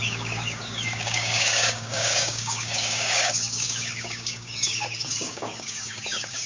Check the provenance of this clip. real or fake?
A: fake